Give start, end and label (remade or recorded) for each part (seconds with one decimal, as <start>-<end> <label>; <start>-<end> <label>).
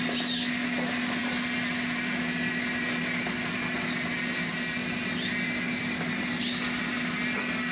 0.0-7.7 recorded